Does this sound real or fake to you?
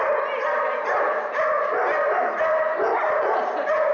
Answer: real